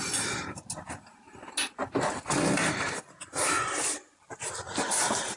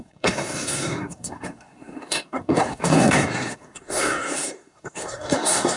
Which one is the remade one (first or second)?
second